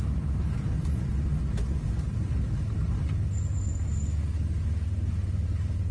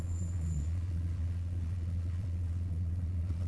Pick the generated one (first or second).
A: second